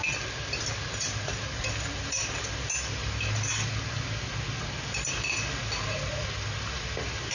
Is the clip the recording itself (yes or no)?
yes